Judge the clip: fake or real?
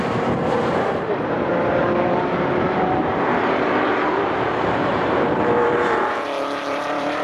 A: fake